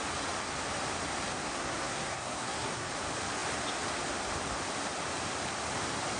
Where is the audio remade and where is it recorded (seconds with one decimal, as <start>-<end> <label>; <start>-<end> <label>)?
0.0-1.4 recorded; 1.4-2.9 remade; 2.9-6.2 recorded